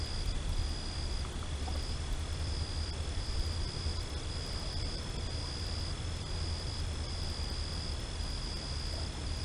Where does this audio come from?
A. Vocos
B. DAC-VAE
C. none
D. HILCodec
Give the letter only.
C